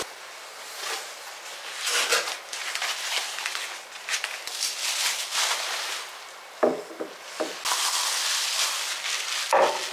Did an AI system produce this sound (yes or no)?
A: no